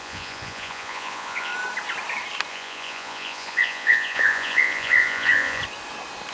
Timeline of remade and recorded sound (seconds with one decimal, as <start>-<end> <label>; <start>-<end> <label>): 0.0-1.5 remade; 1.5-2.5 recorded; 2.5-5.6 remade; 5.6-6.3 recorded